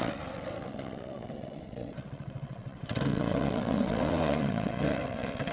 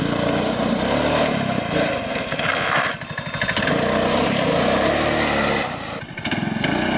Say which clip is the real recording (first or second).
second